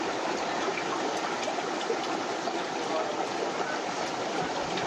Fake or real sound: fake